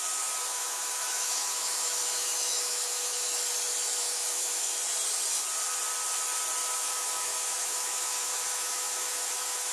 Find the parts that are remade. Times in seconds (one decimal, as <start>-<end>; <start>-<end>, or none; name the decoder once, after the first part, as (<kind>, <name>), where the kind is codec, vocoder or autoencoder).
0.5-3.4 (autoencoder, DAC-VAE); 4.0-4.8; 6.6-9.7